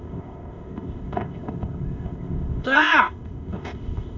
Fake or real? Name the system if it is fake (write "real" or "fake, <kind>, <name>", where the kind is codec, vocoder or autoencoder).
fake, codec, ZipCodec